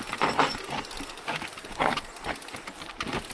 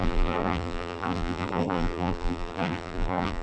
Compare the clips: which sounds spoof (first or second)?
second